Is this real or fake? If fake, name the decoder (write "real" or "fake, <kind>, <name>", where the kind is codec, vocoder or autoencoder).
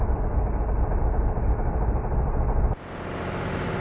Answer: real